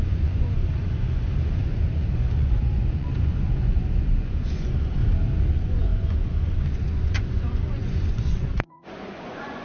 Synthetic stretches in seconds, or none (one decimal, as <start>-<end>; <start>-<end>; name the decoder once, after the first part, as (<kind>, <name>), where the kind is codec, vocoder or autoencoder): 0.0-5.0 (vocoder, Vocos); 5.5-9.6